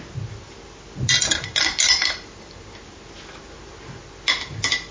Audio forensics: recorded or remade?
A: recorded